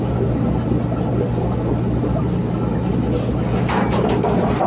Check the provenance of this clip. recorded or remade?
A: recorded